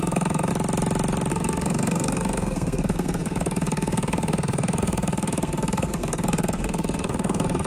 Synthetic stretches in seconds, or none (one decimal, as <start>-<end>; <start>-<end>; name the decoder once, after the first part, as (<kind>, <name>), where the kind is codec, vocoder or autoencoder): 0.0-0.5 (codec, SNAC); 1.3-7.7

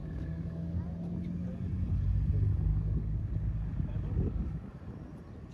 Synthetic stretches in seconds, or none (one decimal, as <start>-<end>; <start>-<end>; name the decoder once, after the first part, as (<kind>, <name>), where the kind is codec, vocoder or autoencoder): 0.0-0.8 (codec, DAC); 2.7-4.7

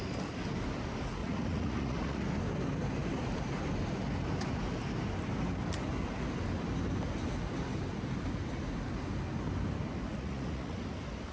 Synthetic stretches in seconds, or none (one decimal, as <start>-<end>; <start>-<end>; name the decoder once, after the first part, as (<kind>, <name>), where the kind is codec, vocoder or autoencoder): 1.2-2.2 (vocoder, Vocos); 10.1-10.8

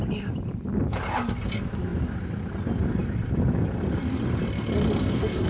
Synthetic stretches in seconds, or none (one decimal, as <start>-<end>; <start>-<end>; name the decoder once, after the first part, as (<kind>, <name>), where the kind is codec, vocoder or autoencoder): 5.0-5.5 (codec, SNAC)

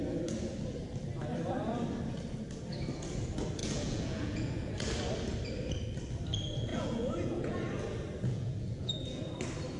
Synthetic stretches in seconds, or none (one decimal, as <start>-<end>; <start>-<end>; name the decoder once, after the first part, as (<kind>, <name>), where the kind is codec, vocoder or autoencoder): 3.6-4.7 (vocoder, Vocos); 6.7-7.6; 8.3-9.2

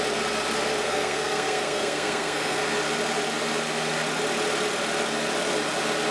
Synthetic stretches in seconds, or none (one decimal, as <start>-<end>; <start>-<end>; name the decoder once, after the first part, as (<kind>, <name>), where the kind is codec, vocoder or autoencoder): 0.8-2.6 (codec, SNAC)